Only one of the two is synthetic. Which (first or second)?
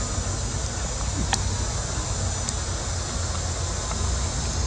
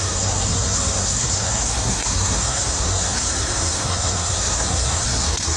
second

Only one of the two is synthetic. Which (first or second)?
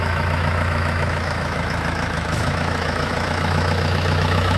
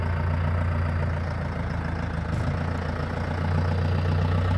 first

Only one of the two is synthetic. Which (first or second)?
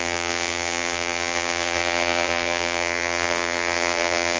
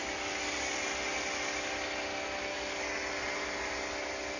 first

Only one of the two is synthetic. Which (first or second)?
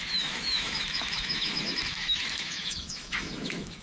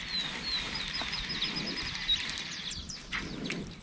first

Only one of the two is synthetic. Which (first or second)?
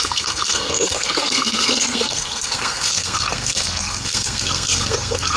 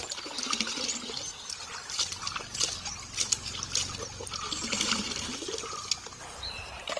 first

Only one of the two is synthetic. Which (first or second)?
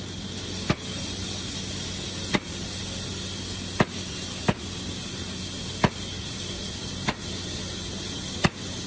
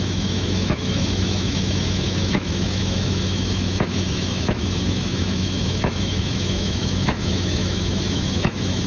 second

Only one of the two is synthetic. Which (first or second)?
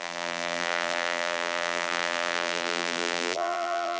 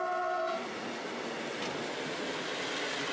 first